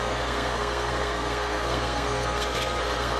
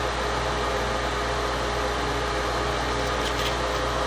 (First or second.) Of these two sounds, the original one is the second